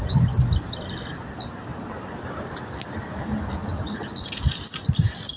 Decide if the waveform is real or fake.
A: real